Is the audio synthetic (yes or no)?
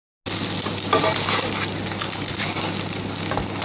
no